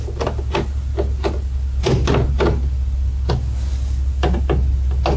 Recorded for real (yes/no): yes